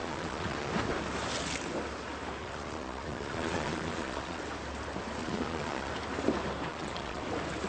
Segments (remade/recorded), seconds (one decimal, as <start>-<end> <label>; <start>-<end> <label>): 0.0-0.7 remade; 0.7-2.4 recorded; 2.4-4.4 remade; 4.4-5.2 recorded; 5.2-5.9 remade; 5.9-6.7 recorded; 6.7-7.2 remade; 7.2-7.7 recorded